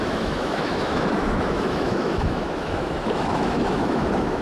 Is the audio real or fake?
fake